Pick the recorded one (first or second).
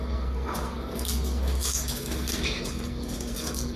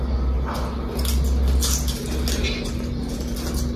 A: second